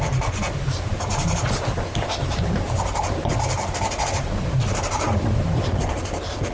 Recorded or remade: remade